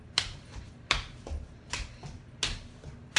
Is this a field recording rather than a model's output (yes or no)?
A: yes